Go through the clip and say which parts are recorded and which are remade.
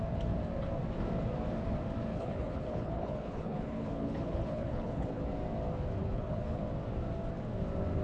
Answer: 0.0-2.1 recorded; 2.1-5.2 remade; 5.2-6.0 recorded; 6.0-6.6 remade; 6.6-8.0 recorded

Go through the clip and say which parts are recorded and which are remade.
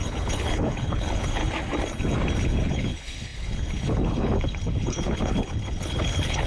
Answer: 0.0-1.4 remade; 1.4-2.4 recorded; 2.4-6.5 remade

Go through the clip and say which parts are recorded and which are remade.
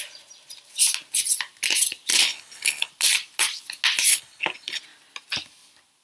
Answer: 0.0-2.2 recorded; 2.2-2.9 remade; 2.9-4.1 recorded; 4.1-4.8 remade; 4.8-6.0 recorded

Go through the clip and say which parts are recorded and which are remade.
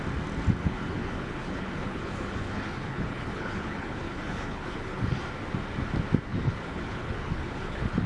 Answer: 0.0-0.6 recorded; 0.6-5.2 remade; 5.2-6.3 recorded; 6.3-8.1 remade